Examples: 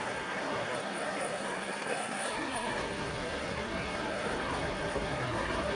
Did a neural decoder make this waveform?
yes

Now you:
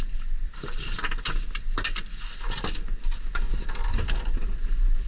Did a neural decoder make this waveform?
no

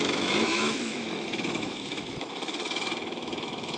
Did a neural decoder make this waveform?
yes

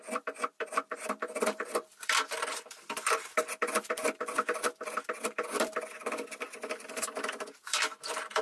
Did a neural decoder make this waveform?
yes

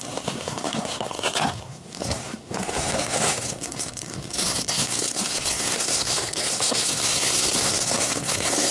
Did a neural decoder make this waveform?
yes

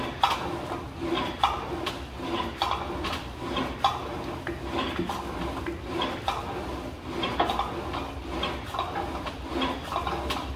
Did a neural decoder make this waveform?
no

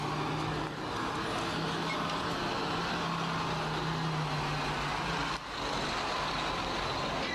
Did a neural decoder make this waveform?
no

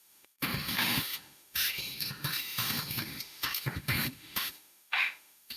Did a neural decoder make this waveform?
yes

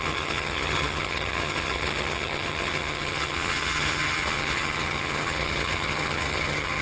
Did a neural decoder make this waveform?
yes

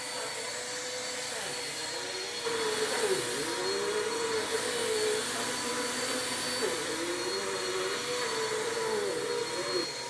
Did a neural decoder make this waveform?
no